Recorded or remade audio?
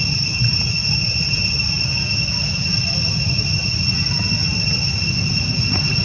recorded